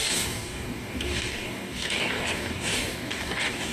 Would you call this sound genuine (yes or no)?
no